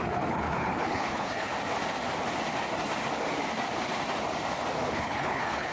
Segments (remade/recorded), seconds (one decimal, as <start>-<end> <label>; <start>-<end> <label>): 0.0-1.5 remade; 1.5-4.9 recorded; 4.9-5.7 remade